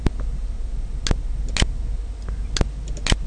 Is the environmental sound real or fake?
real